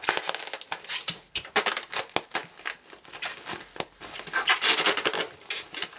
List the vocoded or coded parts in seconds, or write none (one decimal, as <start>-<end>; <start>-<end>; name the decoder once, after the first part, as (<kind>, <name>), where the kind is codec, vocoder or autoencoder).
none